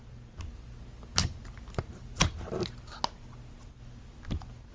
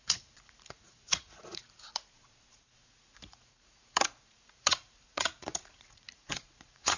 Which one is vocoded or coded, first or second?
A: second